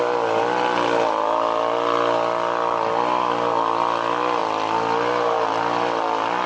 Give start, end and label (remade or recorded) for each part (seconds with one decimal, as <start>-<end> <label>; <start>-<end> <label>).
0.0-6.5 recorded